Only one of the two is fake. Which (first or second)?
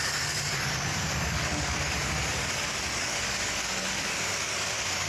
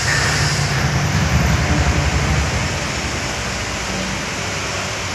first